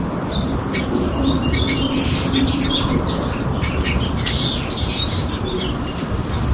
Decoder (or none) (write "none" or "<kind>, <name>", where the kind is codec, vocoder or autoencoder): vocoder, BigVGAN v2